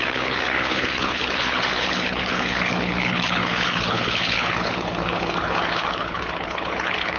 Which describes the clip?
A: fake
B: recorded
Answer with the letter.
A